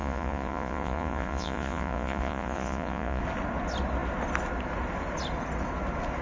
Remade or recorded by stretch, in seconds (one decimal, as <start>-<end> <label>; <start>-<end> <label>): 0.0-3.2 remade; 3.2-6.2 recorded